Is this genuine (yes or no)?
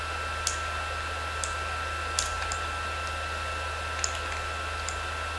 yes